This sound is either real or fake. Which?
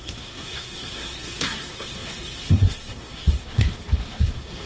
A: fake